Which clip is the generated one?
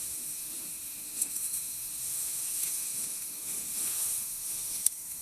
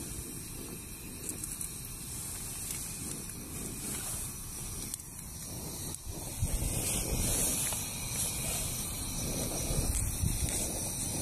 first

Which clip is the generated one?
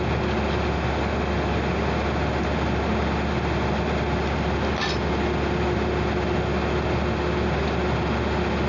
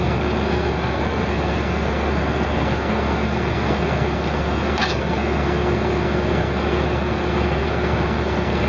second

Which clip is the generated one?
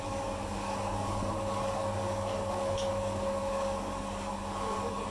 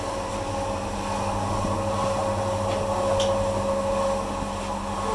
first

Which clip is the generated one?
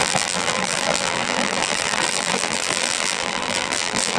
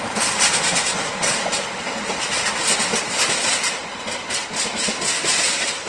first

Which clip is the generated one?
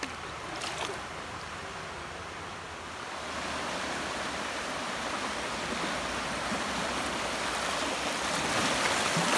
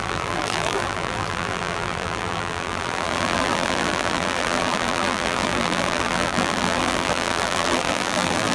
second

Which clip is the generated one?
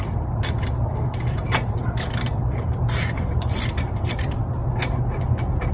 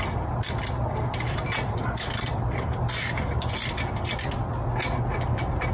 first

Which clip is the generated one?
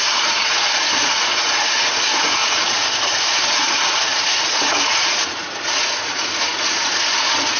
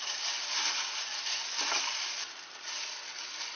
first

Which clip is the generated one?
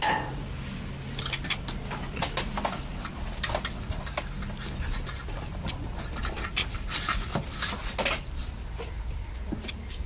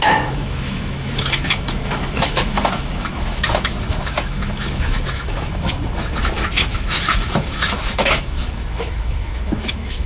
second